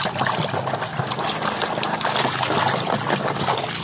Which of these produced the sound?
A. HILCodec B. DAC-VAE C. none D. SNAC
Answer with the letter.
C